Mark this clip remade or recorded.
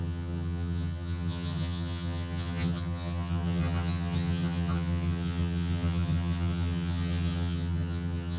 remade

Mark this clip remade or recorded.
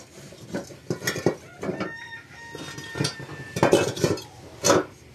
recorded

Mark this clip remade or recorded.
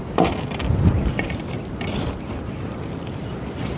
recorded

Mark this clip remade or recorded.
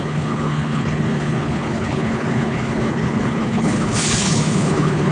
remade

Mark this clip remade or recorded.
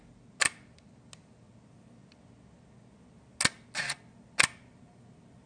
recorded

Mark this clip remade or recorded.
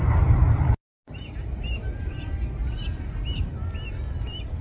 recorded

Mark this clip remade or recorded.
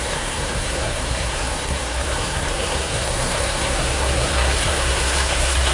remade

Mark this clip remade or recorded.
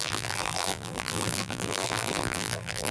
remade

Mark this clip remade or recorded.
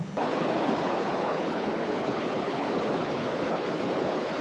remade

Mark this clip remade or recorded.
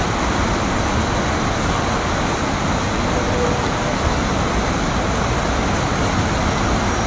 recorded